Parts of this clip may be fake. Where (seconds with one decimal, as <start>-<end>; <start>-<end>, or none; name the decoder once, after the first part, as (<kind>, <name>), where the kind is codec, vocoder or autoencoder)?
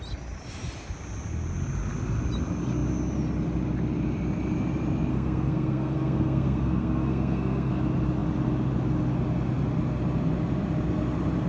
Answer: 5.1-7.7 (codec, SNAC)